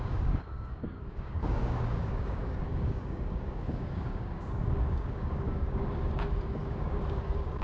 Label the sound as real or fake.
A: fake